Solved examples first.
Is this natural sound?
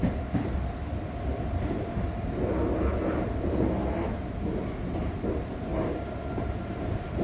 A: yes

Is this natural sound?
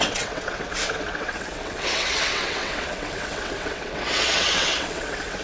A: no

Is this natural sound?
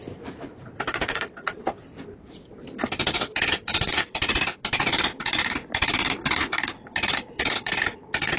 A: yes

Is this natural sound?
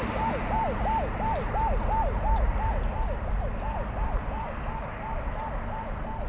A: yes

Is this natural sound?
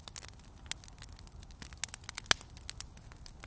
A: yes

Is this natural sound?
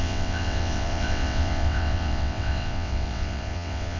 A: no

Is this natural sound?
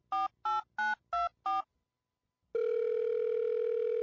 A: yes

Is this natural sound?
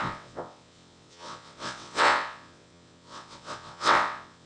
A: no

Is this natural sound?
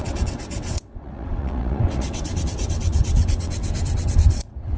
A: no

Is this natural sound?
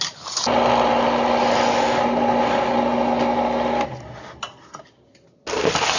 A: yes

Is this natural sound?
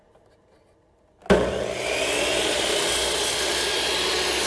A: yes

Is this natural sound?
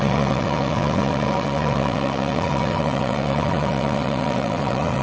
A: no